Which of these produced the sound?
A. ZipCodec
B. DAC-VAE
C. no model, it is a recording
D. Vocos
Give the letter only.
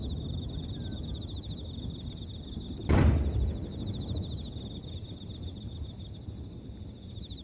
C